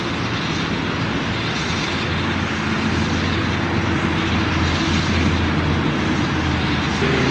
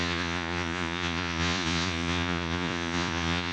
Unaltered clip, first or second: first